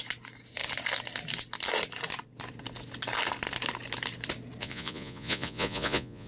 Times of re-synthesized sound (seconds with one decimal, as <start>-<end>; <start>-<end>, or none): 4.6-6.3